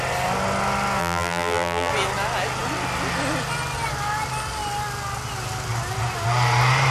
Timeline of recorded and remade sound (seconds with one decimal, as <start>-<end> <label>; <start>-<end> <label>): 0.0-1.0 recorded; 1.0-1.9 remade; 1.9-6.9 recorded